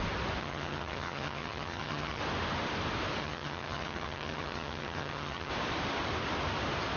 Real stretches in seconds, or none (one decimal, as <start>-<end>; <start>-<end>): 0.0-0.4; 2.2-3.2; 5.5-7.0